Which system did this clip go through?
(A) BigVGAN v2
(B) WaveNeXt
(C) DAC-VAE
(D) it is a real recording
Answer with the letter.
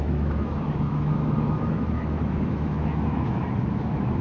C